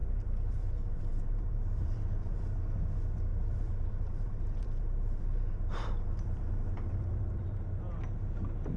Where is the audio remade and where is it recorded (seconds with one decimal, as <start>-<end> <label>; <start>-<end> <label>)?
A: 0.0-2.4 remade; 2.4-3.3 recorded; 3.3-7.9 remade; 7.9-8.8 recorded